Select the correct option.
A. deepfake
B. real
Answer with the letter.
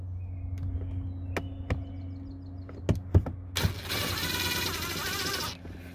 B